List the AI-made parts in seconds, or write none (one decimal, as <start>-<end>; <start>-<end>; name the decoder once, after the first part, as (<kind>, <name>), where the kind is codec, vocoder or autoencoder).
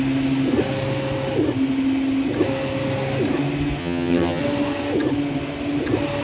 3.8-4.4 (vocoder, HiFi-GAN)